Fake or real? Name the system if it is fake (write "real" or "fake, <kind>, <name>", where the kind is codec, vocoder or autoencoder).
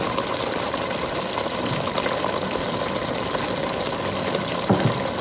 real